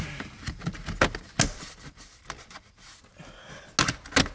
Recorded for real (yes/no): yes